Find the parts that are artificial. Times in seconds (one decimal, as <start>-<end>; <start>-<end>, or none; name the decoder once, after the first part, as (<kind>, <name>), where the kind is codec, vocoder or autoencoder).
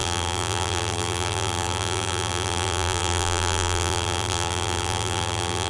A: 0.0-5.7 (vocoder, BigVGAN v2)